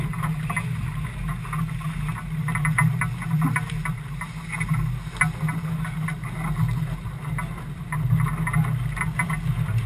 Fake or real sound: real